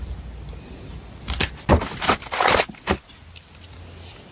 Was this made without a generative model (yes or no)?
yes